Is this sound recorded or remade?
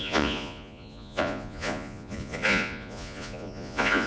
remade